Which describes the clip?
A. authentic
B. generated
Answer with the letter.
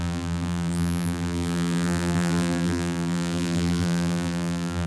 B